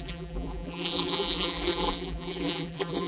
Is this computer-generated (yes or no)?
yes